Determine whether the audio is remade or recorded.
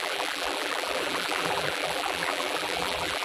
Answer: remade